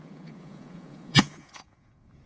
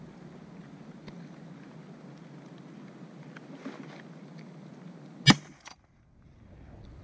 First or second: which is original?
second